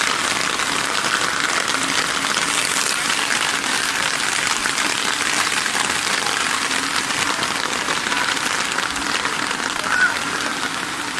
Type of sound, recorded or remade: recorded